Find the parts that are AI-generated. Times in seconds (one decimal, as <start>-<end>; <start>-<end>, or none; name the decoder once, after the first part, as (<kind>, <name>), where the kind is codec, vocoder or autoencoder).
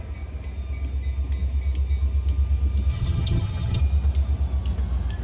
2.9-3.8 (vocoder, HiFi-GAN)